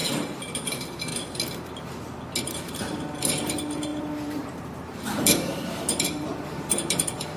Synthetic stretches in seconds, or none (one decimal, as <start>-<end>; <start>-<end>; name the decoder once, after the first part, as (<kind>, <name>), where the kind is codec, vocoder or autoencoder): 0.0-1.1 (vocoder, BigVGAN v2); 2.4-7.4